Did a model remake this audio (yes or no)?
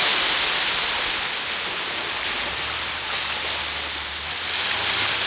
no